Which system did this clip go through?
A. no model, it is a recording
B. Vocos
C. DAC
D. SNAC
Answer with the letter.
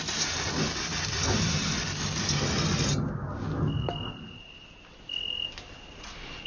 A